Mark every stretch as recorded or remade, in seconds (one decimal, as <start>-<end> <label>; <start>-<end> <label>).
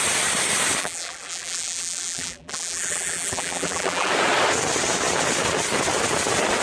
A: 0.0-0.8 recorded; 0.8-4.1 remade; 4.1-6.6 recorded